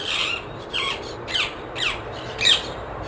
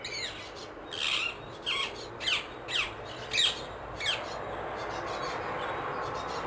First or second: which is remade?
first